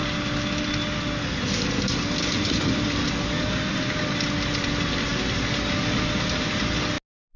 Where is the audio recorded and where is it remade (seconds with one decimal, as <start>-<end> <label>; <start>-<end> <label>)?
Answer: 0.0-7.4 recorded